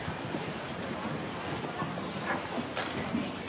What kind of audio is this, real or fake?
real